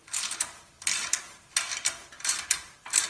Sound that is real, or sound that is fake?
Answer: fake